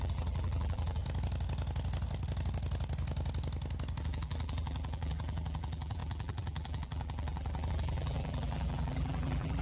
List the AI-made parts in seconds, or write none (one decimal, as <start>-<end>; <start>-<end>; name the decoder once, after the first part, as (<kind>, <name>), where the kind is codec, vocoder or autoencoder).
0.0-1.0 (vocoder, BigVGAN v2); 4.0-9.6